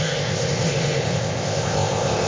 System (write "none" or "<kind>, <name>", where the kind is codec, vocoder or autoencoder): codec, ZipCodec